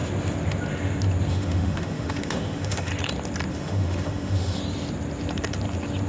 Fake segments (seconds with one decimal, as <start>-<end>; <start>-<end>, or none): 1.3-2.9; 3.5-4.6